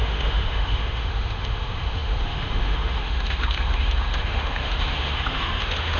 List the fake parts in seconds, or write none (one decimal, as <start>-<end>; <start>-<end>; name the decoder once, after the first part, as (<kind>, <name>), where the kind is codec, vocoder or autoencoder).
0.0-6.0 (autoencoder, DAC-VAE)